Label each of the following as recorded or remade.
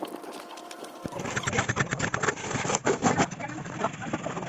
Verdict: recorded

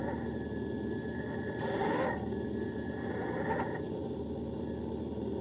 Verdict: recorded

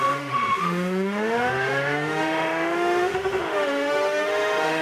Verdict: remade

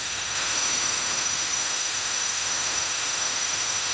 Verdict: remade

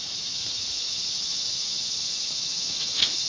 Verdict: remade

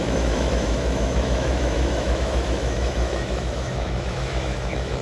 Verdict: remade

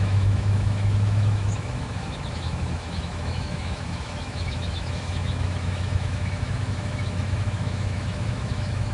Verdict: remade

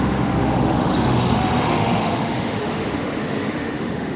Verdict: remade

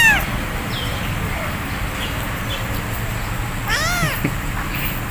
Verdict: recorded